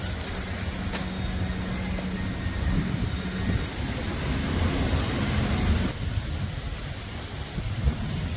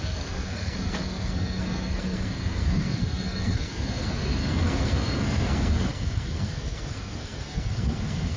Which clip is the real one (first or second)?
first